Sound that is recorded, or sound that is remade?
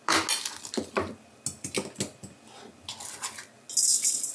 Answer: recorded